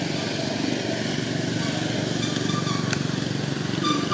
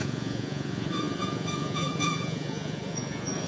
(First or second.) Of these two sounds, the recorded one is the first